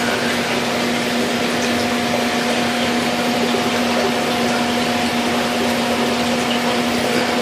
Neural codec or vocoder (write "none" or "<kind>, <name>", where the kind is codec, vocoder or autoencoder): none